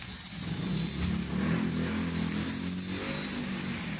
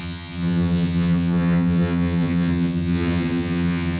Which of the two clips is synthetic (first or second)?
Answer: second